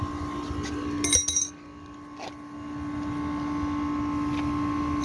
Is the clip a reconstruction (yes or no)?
no